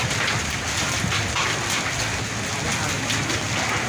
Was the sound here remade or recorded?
recorded